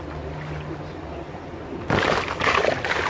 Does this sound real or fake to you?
real